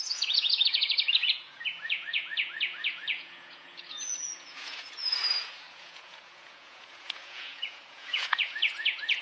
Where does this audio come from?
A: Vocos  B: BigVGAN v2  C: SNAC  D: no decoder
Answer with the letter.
A